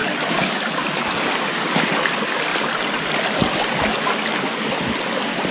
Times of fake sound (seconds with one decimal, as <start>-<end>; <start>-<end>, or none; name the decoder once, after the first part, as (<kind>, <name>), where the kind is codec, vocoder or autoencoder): none